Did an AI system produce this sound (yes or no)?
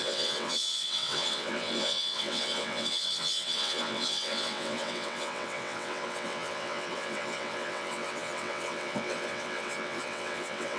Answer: yes